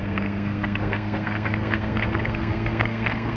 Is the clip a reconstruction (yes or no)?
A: yes